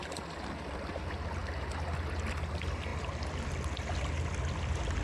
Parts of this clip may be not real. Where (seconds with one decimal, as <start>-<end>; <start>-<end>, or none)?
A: none